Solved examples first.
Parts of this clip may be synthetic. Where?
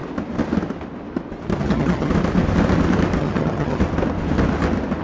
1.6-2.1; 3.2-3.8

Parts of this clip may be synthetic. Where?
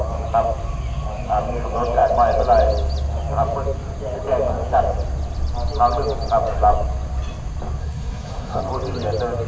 7.8-8.6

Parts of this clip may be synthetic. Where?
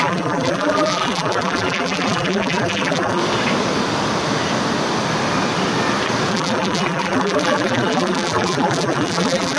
0.0-3.2; 6.3-9.6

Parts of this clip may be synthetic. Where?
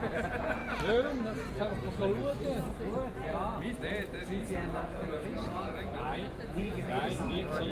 0.0-0.6; 1.5-2.0; 4.2-7.7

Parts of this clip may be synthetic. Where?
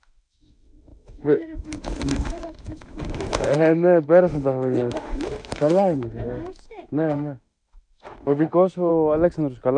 0.0-8.9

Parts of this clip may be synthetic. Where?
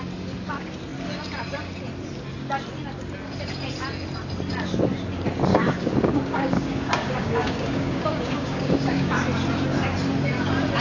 5.5-9.1